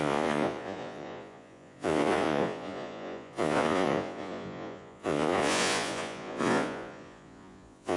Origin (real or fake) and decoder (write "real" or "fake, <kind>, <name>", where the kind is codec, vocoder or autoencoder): fake, vocoder, Vocos